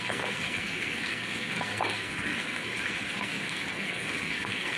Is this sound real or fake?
fake